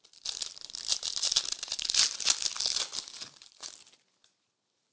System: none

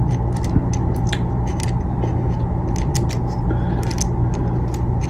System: none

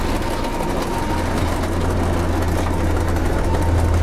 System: none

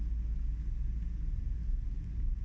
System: none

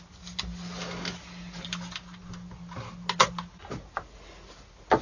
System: none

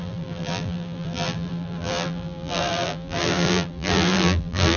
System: vocoder, BigVGAN v2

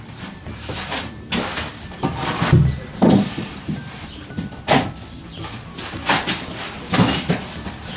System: vocoder, BigVGAN v2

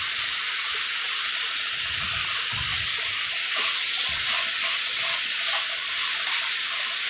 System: vocoder, BigVGAN v2